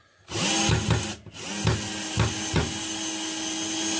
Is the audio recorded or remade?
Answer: recorded